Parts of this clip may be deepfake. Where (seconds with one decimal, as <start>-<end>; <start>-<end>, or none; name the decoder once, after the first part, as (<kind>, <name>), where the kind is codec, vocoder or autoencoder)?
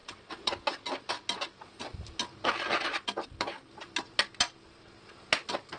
0.0-0.5 (vocoder, WaveNeXt)